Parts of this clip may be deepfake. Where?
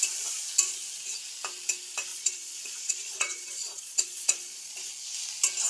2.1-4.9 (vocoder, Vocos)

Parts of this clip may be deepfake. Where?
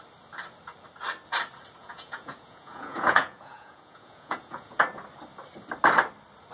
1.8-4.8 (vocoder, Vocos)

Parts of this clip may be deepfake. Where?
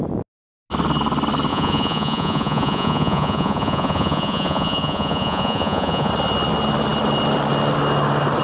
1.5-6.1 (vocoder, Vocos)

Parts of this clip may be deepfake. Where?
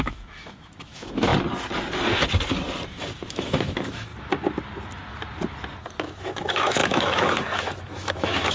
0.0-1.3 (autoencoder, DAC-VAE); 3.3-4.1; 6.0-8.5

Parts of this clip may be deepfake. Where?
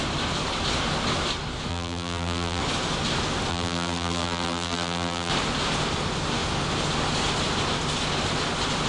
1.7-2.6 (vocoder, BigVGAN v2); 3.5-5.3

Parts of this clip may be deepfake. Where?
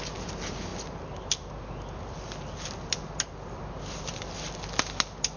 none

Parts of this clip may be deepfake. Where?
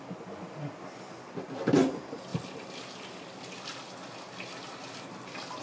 0.0-2.3 (vocoder, BigVGAN v2)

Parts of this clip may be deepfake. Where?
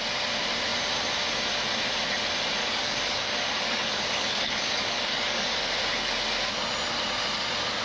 2.6-5.7 (codec, DAC)